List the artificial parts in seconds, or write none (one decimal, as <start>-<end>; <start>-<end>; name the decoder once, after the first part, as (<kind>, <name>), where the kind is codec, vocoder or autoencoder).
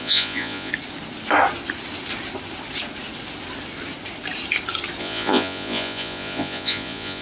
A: 0.0-0.7 (vocoder, Vocos); 5.0-7.2